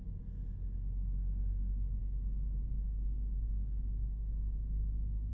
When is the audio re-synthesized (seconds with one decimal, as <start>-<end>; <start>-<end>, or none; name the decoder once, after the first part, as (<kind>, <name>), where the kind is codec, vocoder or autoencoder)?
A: 2.0-5.3 (codec, DAC)